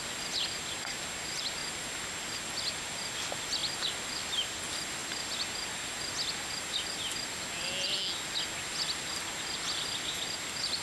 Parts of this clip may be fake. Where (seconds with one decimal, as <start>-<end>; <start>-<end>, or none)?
none